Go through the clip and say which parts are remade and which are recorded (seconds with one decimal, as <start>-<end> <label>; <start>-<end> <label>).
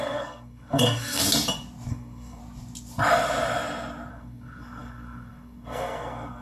0.0-1.2 remade; 1.2-1.9 recorded; 1.9-2.4 remade; 2.4-4.1 recorded; 4.1-6.4 remade